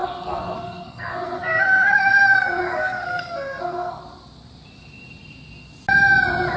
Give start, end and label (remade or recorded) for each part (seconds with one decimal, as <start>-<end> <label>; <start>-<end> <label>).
0.0-4.0 remade; 4.0-6.6 recorded

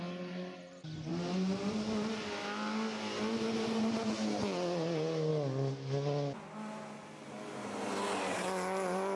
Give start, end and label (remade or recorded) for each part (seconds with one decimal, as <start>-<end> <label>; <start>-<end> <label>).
0.0-9.2 recorded

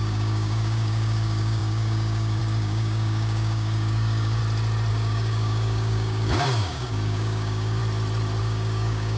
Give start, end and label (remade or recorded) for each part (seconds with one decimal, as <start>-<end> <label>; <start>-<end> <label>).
0.0-4.4 remade; 4.4-4.9 recorded; 4.9-7.8 remade; 7.8-8.4 recorded; 8.4-9.2 remade

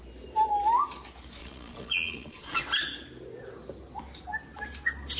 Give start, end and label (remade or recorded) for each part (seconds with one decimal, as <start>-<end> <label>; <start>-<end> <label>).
0.0-1.4 recorded; 1.4-2.6 remade; 2.6-5.2 recorded

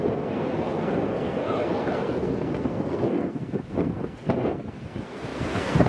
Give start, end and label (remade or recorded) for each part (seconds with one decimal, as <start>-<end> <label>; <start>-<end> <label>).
0.0-5.9 remade